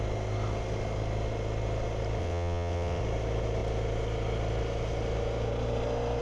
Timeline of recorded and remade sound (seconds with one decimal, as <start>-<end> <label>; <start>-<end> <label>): 0.0-2.2 recorded; 2.2-3.0 remade; 3.0-6.2 recorded